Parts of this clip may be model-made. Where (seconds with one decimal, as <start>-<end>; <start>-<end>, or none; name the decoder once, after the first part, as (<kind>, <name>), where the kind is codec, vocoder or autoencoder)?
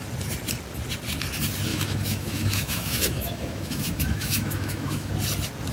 1.7-5.1 (autoencoder, DAC-VAE)